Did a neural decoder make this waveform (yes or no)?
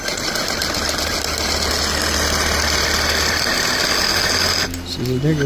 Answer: no